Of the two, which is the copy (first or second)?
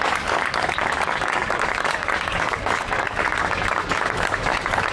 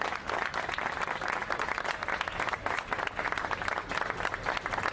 first